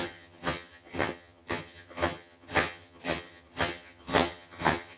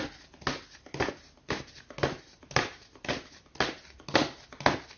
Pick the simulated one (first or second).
first